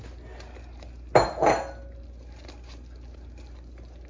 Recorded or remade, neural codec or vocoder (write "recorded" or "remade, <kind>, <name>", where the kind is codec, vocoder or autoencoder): recorded